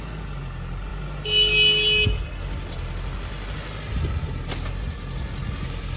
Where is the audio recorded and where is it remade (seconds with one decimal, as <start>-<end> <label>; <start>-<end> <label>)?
0.0-6.0 recorded